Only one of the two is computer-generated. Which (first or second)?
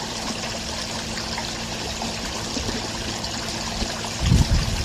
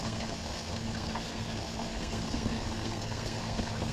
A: second